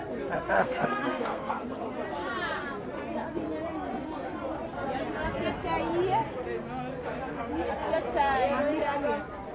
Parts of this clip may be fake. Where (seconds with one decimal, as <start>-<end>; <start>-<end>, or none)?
0.6-1.9

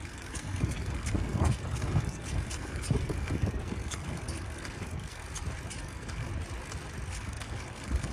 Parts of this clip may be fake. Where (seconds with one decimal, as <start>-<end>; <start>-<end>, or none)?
0.0-5.2; 5.8-6.3; 7.1-8.1